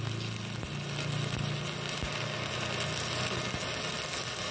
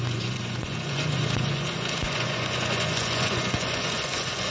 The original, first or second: first